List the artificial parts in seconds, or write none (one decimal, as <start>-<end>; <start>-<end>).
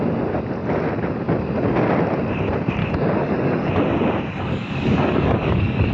2.8-3.7; 4.3-5.9